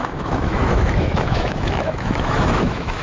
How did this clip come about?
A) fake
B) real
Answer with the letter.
A